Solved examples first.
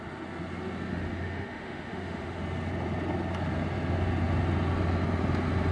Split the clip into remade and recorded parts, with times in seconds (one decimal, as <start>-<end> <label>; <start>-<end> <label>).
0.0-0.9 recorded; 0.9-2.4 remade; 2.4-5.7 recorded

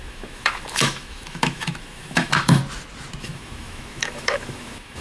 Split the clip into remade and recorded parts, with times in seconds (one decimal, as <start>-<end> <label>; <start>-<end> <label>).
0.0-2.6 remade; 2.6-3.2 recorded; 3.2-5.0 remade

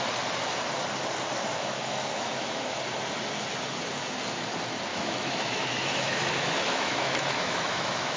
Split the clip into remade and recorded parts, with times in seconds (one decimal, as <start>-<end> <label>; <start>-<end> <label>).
0.0-1.5 recorded; 1.5-2.8 remade; 2.8-4.9 recorded; 4.9-8.2 remade

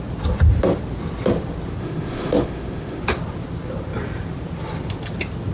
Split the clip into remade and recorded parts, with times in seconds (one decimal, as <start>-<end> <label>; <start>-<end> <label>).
0.0-1.8 recorded; 1.8-3.0 remade; 3.0-5.5 recorded

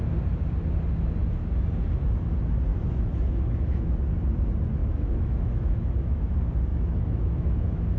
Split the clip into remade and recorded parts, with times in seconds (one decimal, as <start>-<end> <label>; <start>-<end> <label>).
0.0-2.7 recorded; 2.7-3.9 remade; 3.9-4.8 recorded; 4.8-6.3 remade; 6.3-6.7 recorded; 6.7-8.0 remade

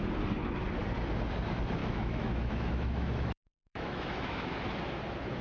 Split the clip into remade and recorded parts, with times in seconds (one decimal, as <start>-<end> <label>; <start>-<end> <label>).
0.0-1.8 recorded; 1.8-4.5 remade; 4.5-5.4 recorded

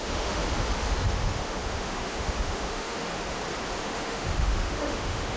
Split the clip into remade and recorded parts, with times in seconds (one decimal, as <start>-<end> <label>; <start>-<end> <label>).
0.0-0.4 remade; 0.4-1.1 recorded; 1.1-3.1 remade; 3.1-3.8 recorded; 3.8-5.4 remade

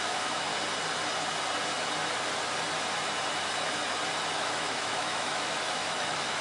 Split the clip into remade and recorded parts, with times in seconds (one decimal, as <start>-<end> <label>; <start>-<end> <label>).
0.0-0.5 remade; 0.5-4.3 recorded; 4.3-6.4 remade